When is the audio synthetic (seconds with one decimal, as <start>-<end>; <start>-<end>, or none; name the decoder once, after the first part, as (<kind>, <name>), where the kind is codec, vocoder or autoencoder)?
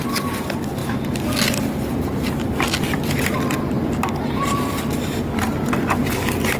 none